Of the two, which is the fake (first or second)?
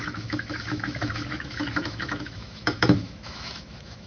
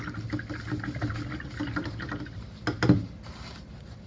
first